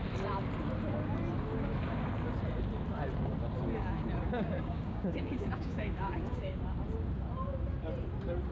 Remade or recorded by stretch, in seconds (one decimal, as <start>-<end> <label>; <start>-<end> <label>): 0.0-4.3 recorded; 4.3-6.6 remade; 6.6-8.5 recorded